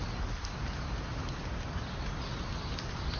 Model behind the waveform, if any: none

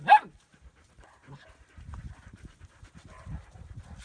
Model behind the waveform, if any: vocoder, BigVGAN v2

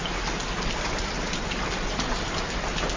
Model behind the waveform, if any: none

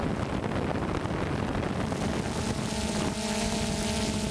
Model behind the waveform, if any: none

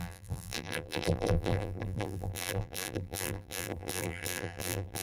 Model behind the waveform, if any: vocoder, BigVGAN v2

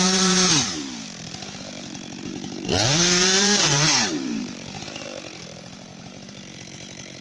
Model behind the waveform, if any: vocoder, BigVGAN v2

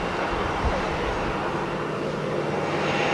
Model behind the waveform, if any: none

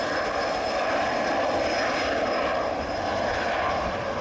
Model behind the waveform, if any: none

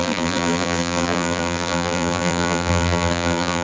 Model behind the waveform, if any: vocoder, BigVGAN v2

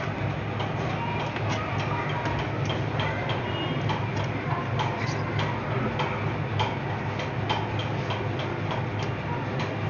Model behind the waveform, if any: none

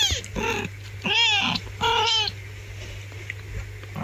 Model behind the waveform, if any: none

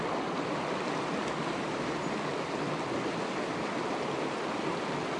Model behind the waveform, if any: none